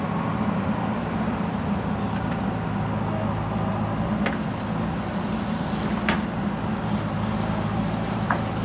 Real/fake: real